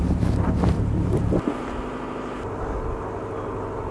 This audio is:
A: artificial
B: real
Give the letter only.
B